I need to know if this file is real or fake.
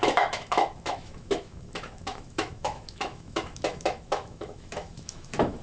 fake